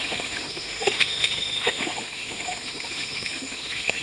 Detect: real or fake fake